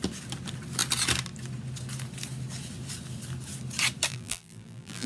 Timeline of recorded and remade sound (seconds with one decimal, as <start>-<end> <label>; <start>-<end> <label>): 0.0-4.1 recorded; 4.1-5.1 remade